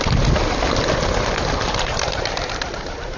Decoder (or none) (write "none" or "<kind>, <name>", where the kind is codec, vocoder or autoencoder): none